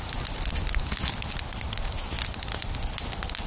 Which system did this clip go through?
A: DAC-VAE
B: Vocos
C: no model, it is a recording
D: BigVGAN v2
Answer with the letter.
C